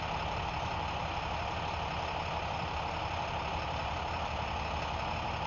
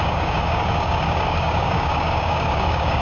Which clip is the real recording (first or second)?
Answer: first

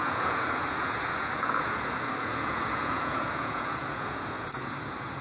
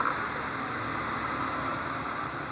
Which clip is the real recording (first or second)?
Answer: second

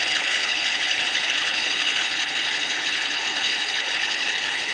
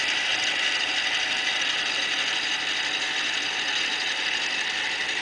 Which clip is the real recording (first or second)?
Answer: second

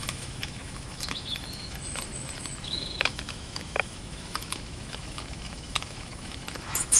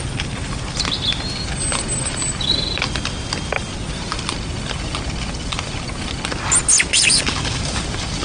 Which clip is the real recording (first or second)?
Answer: second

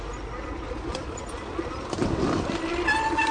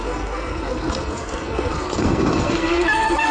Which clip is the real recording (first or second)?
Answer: first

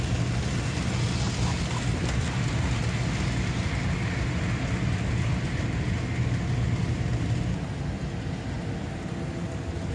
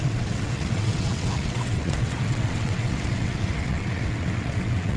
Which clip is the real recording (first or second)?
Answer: first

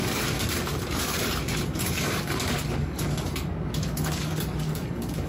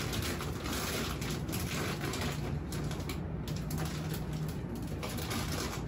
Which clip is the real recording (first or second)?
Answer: second